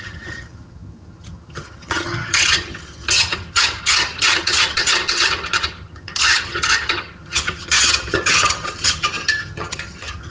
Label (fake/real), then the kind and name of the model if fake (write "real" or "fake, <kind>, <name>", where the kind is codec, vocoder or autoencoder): fake, vocoder, HiFi-GAN